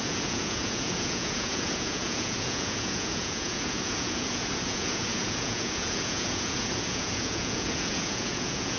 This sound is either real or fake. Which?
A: fake